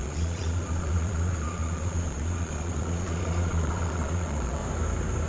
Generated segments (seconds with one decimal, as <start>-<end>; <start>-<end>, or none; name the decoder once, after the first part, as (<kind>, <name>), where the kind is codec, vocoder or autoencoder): 0.0-4.6 (vocoder, Vocos)